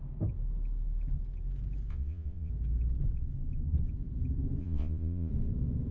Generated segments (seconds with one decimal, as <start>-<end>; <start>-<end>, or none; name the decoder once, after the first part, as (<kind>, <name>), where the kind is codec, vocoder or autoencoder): 1.9-2.5 (vocoder, Vocos); 4.6-5.3